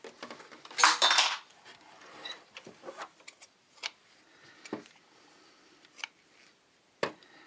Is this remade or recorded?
remade